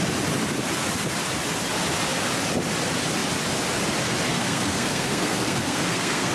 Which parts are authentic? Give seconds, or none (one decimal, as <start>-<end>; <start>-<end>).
0.0-4.3